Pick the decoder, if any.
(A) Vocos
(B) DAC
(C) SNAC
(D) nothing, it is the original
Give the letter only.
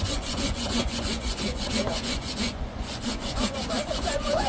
A